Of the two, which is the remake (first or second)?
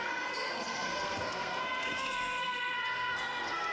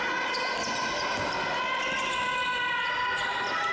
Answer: first